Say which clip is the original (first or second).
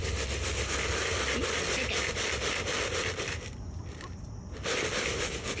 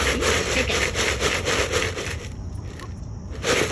first